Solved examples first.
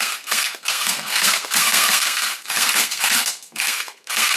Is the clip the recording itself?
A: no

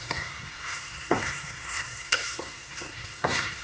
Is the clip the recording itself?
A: no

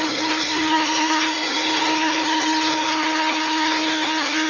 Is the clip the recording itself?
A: no